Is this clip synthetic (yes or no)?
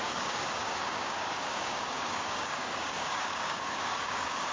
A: yes